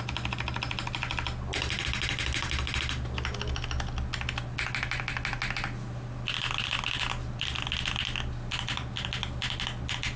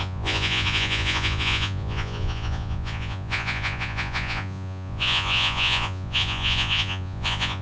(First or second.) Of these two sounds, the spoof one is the second